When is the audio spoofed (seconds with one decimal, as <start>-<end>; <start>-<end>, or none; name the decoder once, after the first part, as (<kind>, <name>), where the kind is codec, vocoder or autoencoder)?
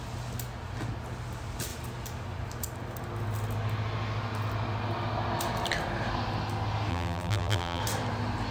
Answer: 6.9-7.8 (vocoder, BigVGAN v2)